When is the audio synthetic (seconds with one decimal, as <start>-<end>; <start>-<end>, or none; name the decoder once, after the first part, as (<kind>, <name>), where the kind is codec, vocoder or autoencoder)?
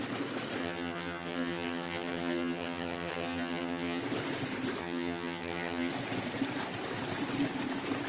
0.6-4.0 (vocoder, HiFi-GAN); 4.8-5.9